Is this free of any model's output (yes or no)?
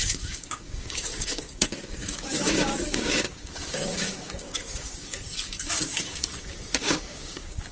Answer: no